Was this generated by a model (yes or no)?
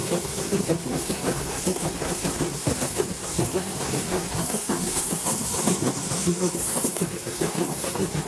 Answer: yes